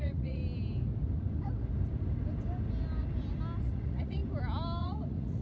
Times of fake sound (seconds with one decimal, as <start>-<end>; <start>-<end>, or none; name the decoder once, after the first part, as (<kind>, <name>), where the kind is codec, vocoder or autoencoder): 0.0-0.4 (vocoder, Vocos); 3.6-4.2; 4.8-5.4